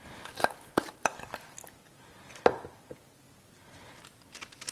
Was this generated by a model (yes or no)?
no